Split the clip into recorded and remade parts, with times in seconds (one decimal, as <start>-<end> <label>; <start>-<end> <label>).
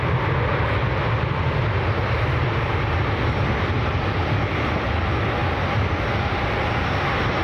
0.0-7.4 recorded